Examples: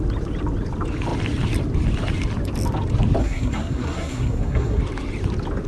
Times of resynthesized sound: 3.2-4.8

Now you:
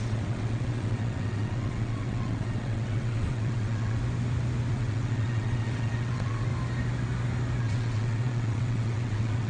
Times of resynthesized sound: 0.0-4.0; 4.7-6.5; 7.6-9.5

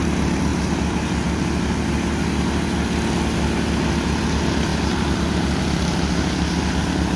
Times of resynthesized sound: none

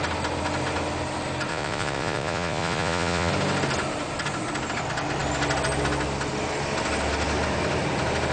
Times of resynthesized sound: 1.5-3.3

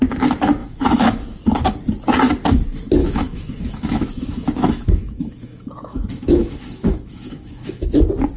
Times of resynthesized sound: 0.6-1.5; 3.0-8.0